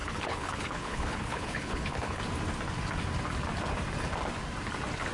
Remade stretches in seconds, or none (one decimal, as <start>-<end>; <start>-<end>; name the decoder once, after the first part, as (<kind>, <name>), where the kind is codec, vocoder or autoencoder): 0.0-2.2 (codec, HILCodec)